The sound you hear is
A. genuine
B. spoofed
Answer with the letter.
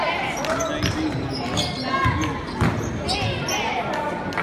A